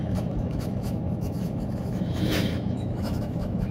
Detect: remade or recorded remade